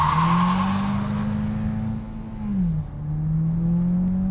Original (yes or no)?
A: yes